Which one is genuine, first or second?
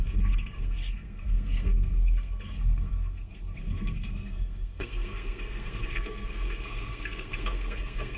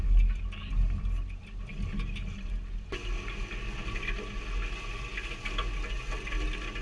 second